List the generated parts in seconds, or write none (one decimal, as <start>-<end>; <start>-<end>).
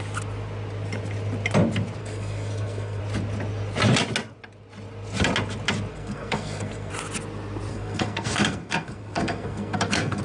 2.0-3.0; 5.9-6.9; 7.7-10.2